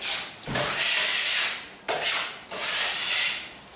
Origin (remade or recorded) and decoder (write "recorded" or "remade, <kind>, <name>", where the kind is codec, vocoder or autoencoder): recorded